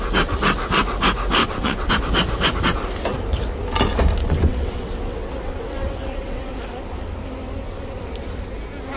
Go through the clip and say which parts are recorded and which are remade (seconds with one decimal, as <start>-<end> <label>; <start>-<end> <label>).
0.0-1.4 recorded; 1.4-1.9 remade; 1.9-4.2 recorded; 4.2-6.5 remade; 6.5-9.0 recorded

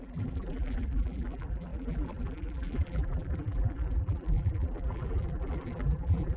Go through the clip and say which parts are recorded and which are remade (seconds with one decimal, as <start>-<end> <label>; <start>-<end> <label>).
0.0-6.4 remade

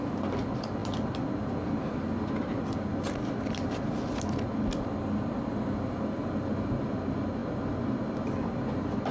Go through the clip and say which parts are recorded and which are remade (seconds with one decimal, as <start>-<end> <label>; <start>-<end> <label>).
0.0-9.1 recorded

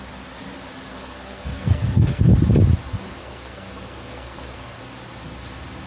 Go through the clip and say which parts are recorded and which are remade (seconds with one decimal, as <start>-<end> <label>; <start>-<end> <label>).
0.0-0.9 recorded; 0.9-2.2 remade; 2.2-3.2 recorded; 3.2-4.8 remade; 4.8-5.9 recorded

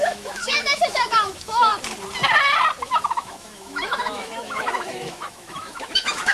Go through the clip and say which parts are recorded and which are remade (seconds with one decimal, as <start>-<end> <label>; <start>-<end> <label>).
0.0-1.7 remade; 1.7-2.8 recorded; 2.8-6.3 remade

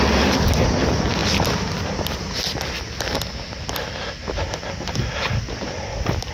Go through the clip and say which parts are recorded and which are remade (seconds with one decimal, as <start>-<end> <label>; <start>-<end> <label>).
0.0-6.3 recorded

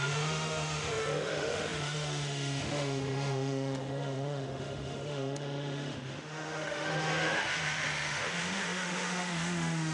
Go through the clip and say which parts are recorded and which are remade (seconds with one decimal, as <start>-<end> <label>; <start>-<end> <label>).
0.0-9.9 remade

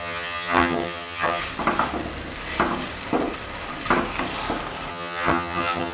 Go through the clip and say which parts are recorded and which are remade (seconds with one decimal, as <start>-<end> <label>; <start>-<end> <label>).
0.0-1.4 remade; 1.4-4.9 recorded; 4.9-5.9 remade